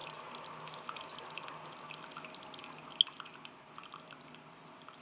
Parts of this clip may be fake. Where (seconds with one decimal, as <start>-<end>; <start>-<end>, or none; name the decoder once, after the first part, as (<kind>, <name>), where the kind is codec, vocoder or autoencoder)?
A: 3.8-5.0 (vocoder, BigVGAN v2)